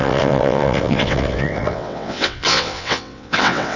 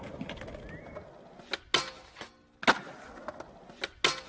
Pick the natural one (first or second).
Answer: second